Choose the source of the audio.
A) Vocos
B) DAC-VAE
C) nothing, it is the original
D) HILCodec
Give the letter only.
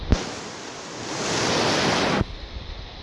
C